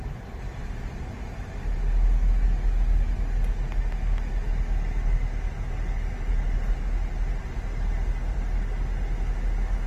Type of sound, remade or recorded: recorded